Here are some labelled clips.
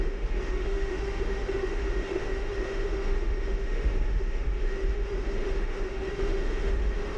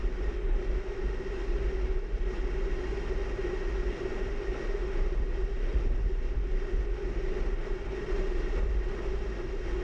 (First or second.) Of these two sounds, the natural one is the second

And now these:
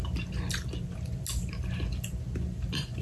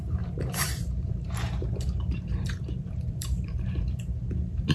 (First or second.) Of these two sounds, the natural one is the first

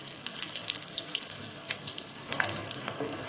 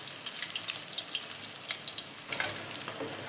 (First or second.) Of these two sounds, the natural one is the second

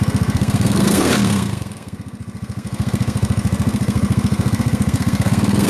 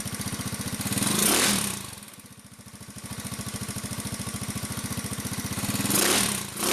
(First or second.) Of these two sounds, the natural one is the second